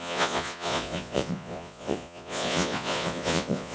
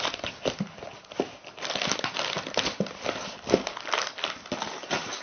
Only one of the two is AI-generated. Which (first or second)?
first